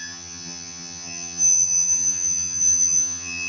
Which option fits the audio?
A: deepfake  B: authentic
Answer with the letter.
A